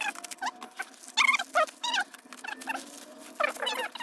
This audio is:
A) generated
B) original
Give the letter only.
B